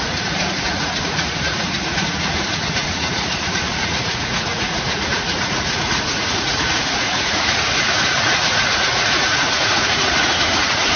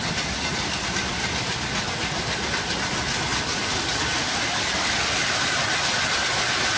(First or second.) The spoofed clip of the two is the first